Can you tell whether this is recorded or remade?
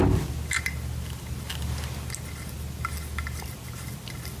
recorded